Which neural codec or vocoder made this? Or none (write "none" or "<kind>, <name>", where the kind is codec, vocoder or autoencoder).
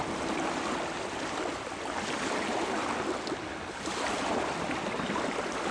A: none